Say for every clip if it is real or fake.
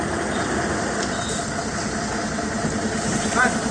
real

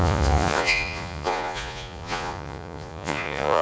fake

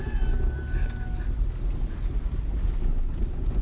real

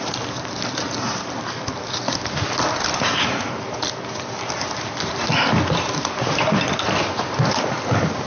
real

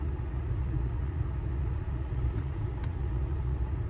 fake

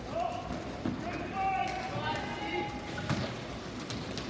real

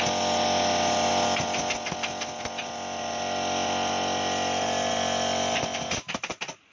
real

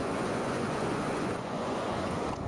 fake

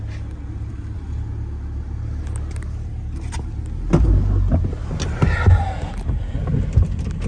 real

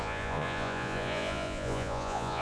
fake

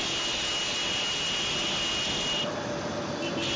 real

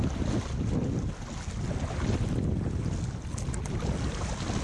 real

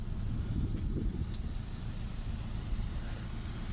real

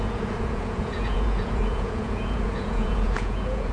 fake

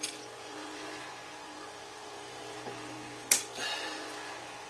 fake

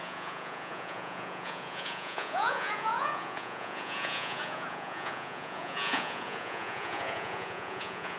fake